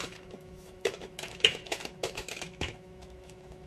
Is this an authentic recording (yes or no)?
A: no